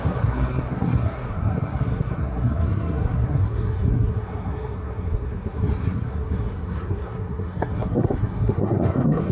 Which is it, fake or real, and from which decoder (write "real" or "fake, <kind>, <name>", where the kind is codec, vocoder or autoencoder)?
fake, codec, SNAC